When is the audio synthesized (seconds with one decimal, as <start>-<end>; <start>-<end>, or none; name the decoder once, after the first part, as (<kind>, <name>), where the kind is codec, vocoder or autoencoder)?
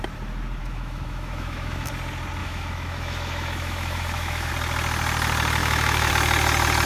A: 0.6-1.9 (autoencoder, DAC-VAE); 2.4-4.5; 5.6-6.1